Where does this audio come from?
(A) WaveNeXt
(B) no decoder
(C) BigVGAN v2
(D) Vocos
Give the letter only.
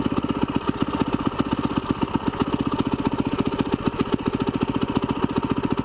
B